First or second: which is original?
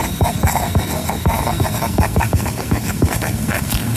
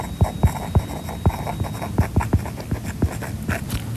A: second